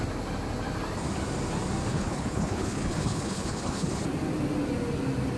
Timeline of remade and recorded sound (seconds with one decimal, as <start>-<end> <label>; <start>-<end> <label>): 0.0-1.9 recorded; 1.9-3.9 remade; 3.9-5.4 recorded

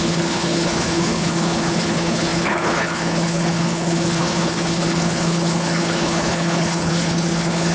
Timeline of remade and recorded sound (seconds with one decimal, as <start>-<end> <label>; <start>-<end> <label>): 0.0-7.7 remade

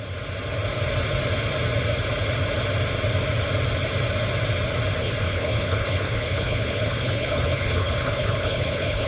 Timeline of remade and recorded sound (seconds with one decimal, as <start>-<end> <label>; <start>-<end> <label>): 0.0-5.0 recorded; 5.0-9.1 remade

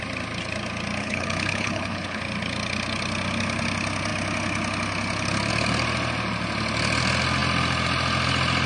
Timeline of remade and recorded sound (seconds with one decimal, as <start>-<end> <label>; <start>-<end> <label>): 0.0-1.0 recorded; 1.0-2.2 remade; 2.2-8.7 recorded